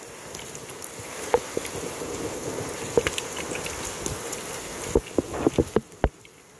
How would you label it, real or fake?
real